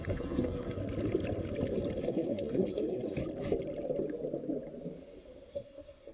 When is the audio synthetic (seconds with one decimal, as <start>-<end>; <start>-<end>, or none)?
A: 0.0-0.8; 2.0-3.2; 5.5-6.1